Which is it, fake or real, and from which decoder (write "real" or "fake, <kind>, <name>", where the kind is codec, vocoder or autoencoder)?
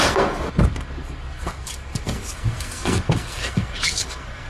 fake, codec, SNAC